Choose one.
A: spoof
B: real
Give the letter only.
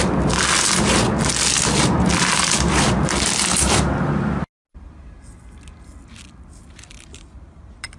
B